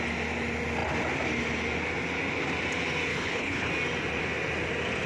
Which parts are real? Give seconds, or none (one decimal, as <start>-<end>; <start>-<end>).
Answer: 0.0-3.1; 3.7-5.1